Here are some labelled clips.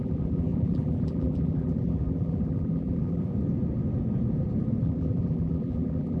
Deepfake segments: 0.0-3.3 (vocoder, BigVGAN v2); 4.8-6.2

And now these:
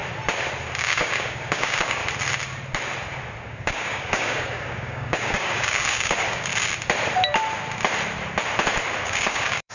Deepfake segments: 0.8-2.0 (codec, DAC); 3.4-6.5; 9.0-9.7

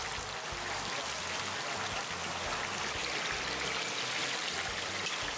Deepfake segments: none

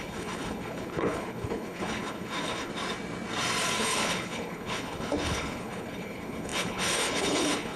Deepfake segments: 0.0-2.7 (codec, HILCodec); 3.8-7.8

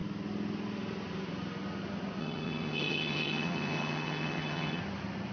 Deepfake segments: 2.2-4.8 (vocoder, HiFi-GAN)

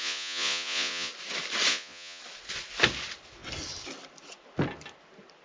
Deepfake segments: 0.0-1.1 (vocoder, Vocos); 1.7-2.2